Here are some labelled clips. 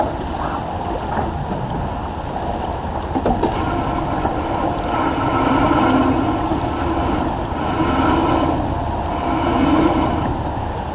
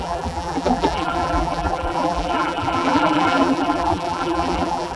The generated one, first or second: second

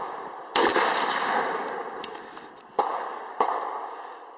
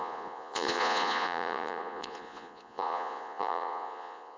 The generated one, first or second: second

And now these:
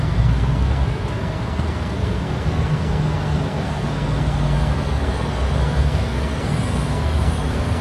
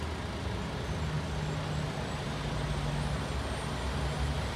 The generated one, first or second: first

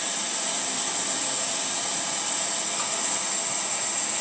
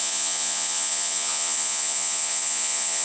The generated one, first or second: second